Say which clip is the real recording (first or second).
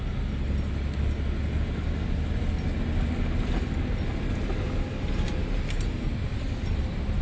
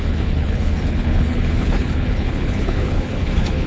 first